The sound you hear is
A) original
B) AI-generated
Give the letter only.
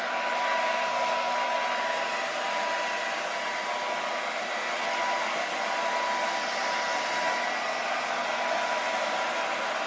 A